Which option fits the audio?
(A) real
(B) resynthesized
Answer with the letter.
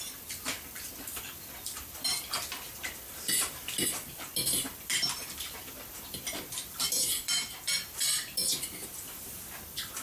B